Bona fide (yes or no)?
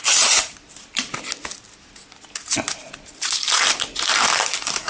yes